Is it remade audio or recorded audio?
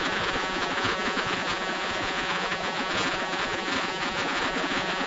remade